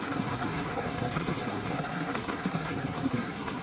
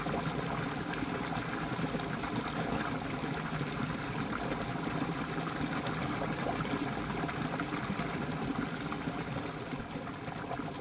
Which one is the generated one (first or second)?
first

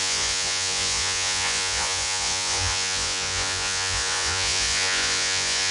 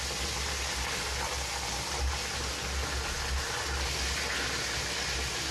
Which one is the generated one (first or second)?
first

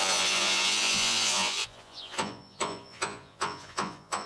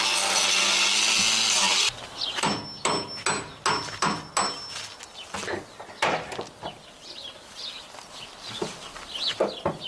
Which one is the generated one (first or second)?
first